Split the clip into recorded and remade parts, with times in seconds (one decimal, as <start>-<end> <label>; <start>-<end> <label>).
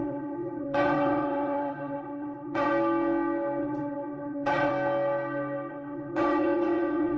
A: 0.0-2.7 remade; 2.7-3.6 recorded; 3.6-4.7 remade; 4.7-5.7 recorded; 5.7-7.2 remade